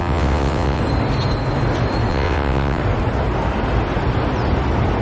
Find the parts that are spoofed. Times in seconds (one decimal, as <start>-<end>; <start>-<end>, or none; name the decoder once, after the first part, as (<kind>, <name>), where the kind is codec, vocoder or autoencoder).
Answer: 0.0-0.8 (vocoder, WaveNeXt); 2.1-2.8